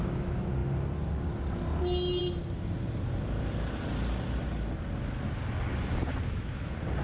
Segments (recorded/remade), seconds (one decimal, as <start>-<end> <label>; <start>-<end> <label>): 0.0-7.0 recorded